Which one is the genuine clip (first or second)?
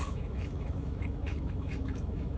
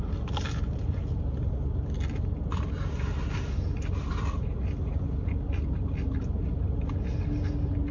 second